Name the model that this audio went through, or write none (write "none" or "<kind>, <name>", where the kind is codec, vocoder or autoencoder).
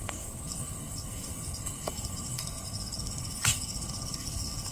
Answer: codec, SNAC